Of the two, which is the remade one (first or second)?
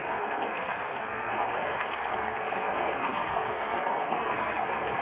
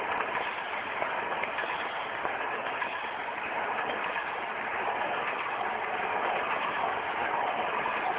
first